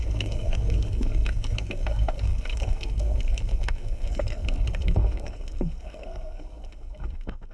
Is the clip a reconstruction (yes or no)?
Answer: yes